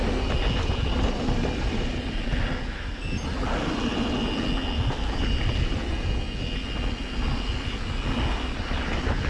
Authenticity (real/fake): real